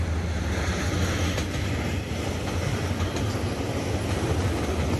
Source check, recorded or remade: recorded